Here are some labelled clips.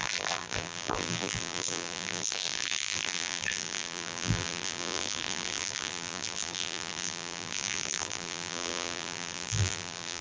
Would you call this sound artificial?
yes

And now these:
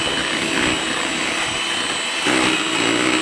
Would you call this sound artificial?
no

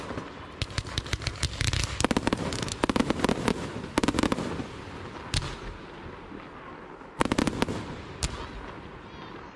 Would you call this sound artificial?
no